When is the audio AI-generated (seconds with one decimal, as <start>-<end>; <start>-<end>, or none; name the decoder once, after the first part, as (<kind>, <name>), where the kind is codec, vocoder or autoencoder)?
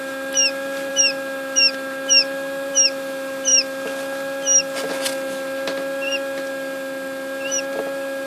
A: none